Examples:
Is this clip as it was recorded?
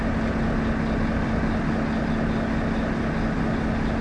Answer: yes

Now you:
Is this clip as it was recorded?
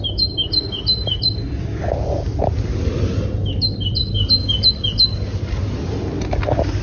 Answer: yes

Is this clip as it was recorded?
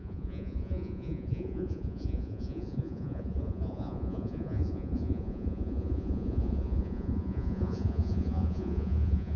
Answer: no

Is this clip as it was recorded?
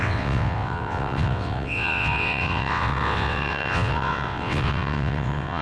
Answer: no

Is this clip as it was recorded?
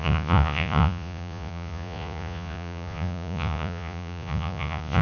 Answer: no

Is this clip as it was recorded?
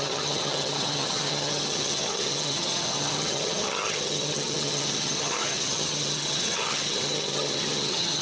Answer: no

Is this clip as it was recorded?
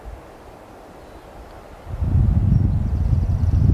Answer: yes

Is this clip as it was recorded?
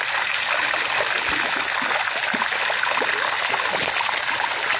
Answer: yes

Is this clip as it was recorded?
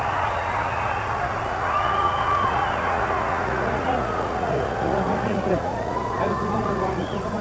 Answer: no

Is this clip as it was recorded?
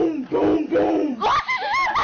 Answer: yes